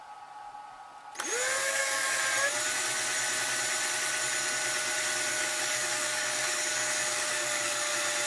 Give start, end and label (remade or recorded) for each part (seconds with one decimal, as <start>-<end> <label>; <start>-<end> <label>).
0.0-1.6 recorded; 1.6-2.2 remade; 2.2-5.3 recorded; 5.3-7.9 remade; 7.9-8.3 recorded